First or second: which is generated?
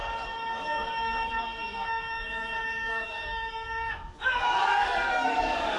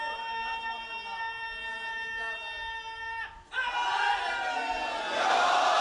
first